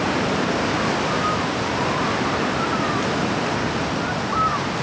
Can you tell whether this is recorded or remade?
recorded